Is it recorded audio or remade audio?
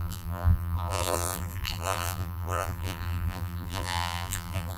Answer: remade